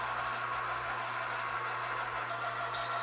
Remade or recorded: recorded